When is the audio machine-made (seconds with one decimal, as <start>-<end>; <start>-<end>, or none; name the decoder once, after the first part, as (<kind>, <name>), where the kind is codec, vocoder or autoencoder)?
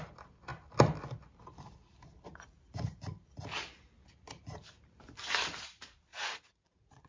6.1-7.1 (vocoder, Vocos)